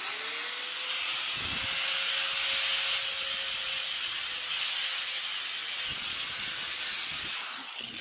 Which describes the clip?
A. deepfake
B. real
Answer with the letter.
B